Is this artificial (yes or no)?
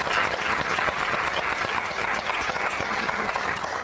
yes